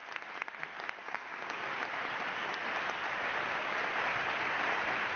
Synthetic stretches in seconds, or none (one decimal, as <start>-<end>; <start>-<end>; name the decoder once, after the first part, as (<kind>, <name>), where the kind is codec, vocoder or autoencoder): 1.0-1.8 (codec, DAC)